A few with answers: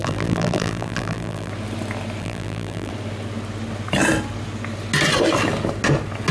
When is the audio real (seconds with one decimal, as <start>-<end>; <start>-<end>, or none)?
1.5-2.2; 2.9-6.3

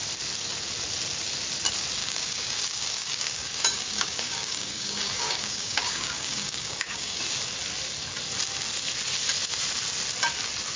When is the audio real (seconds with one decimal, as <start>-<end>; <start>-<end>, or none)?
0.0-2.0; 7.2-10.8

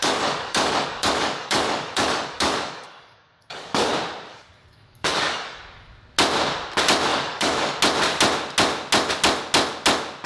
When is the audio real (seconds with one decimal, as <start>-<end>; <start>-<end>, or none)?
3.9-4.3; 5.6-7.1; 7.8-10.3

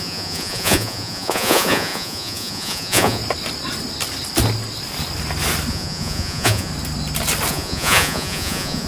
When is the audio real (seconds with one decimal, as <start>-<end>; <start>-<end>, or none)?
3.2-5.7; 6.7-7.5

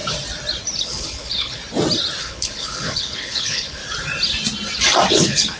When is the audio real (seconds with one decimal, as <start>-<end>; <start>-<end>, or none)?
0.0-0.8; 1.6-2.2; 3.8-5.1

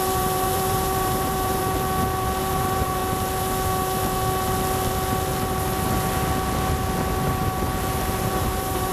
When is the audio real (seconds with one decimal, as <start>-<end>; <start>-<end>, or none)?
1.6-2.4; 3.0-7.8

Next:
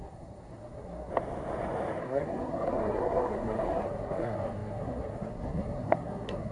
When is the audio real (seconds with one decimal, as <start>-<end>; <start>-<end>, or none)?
1.1-2.0